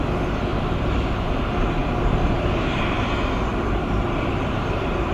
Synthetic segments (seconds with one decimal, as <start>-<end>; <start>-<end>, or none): 0.5-1.4; 1.8-3.0; 3.5-5.1